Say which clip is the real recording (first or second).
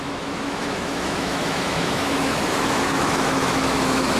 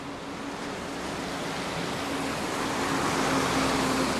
second